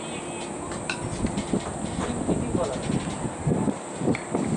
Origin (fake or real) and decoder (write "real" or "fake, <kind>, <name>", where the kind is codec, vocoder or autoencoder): real